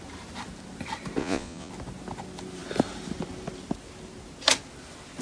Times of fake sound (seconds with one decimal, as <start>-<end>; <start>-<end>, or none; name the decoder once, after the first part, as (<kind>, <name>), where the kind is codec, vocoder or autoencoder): 1.2-1.7 (vocoder, Vocos)